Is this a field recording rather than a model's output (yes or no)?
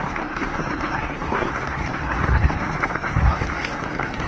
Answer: no